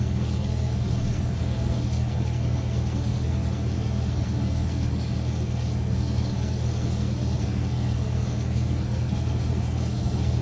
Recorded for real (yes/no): no